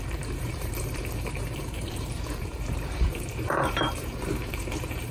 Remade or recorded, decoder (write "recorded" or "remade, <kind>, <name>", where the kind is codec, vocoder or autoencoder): remade, vocoder, BigVGAN v2